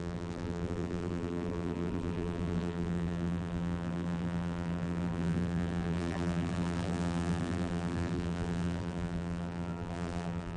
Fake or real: fake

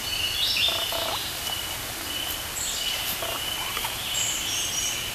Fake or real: real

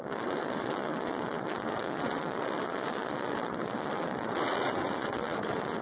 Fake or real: fake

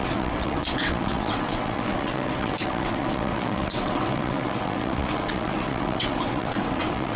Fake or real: fake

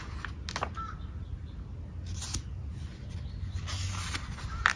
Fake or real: real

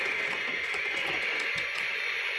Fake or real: fake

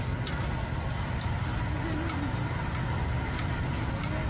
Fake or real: real